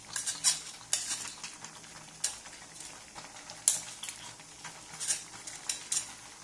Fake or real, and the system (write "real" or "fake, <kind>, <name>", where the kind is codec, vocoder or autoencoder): real